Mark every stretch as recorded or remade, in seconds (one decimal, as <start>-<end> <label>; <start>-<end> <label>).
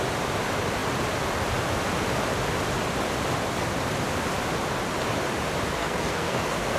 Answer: 0.0-5.8 recorded; 5.8-6.8 remade